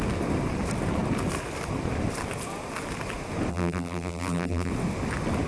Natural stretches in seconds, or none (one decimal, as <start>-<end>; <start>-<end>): 0.0-3.5; 4.7-5.5